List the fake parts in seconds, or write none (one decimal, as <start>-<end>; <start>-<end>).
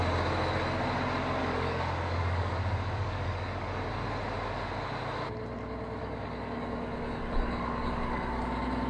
1.4-3.8; 6.0-8.4